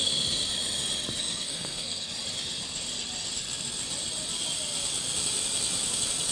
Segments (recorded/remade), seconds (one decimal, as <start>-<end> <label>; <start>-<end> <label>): 0.0-1.2 recorded; 1.2-2.1 remade; 2.1-6.3 recorded